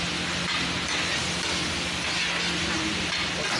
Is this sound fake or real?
real